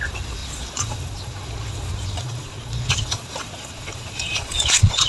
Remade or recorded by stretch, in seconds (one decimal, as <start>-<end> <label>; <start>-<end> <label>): 0.0-5.1 remade